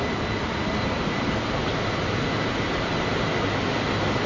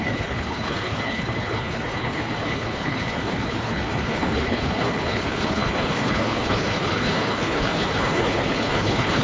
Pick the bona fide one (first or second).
first